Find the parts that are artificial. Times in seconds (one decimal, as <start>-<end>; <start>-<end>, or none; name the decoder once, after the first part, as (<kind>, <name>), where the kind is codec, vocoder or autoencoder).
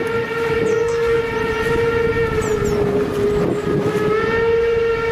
0.7-1.2 (codec, SNAC)